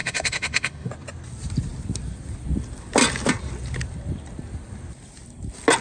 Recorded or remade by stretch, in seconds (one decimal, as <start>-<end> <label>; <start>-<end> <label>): 0.0-0.9 remade; 0.9-5.8 recorded